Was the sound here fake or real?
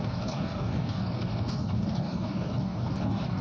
fake